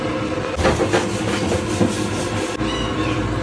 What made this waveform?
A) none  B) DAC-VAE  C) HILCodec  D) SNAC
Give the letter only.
A